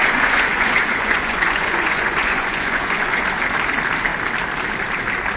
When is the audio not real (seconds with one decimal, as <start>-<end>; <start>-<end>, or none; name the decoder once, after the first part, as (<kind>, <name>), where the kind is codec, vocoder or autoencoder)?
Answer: 0.0-3.2 (vocoder, Vocos)